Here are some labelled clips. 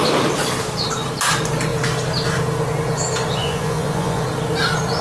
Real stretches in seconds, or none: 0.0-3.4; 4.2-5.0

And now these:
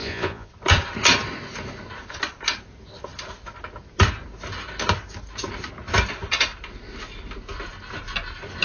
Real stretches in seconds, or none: 0.5-8.6

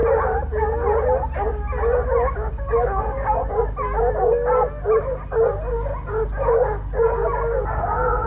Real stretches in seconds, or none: 0.0-8.3

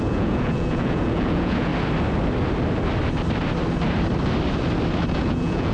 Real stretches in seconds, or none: 1.7-5.1

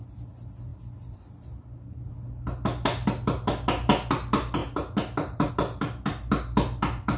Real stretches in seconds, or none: 0.0-7.2